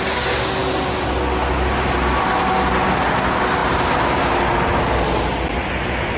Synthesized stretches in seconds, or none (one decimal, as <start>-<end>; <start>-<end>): none